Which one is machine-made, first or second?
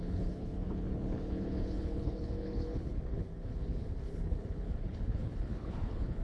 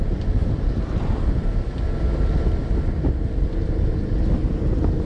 first